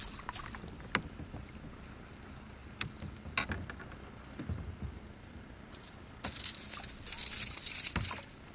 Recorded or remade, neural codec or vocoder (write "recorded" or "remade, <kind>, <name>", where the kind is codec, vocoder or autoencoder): recorded